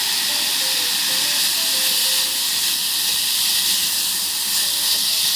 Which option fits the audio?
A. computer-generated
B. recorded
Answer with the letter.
B